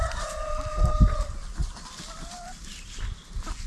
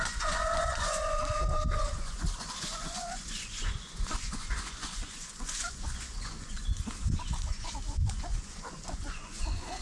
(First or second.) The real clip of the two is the first